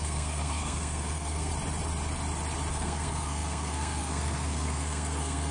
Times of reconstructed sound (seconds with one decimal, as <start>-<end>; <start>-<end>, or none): 0.0-1.5; 2.7-5.5